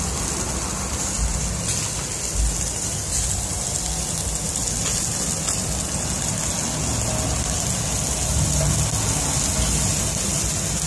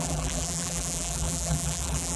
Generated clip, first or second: second